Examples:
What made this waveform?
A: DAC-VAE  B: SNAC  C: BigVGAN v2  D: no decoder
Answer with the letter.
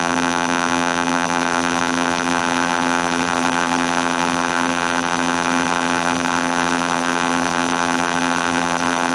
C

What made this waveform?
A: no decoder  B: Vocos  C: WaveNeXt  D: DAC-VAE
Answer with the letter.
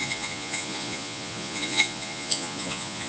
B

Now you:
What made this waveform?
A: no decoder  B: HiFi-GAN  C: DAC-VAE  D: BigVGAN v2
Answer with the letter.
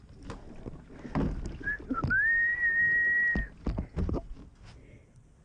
A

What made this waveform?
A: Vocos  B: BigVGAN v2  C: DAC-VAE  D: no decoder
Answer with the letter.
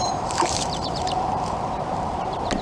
B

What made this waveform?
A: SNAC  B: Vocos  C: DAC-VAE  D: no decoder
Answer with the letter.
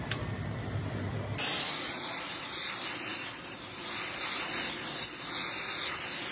D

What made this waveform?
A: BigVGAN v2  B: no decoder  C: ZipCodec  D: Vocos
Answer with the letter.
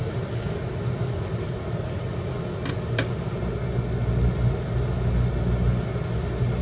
B